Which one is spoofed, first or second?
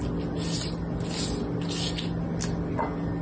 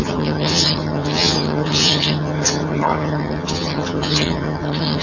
second